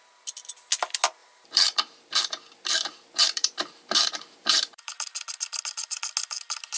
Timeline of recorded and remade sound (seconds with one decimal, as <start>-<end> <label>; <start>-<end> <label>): 0.0-1.2 recorded; 1.2-4.9 remade; 4.9-6.8 recorded